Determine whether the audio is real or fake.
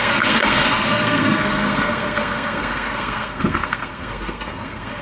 fake